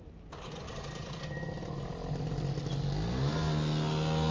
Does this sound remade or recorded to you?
recorded